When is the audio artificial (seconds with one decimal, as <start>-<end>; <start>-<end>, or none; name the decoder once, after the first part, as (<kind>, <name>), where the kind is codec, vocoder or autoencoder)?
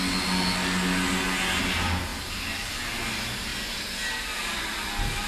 none